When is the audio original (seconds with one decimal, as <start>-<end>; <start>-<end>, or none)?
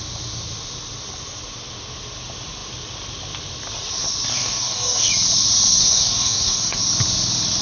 0.0-4.3; 5.1-5.8; 6.8-7.6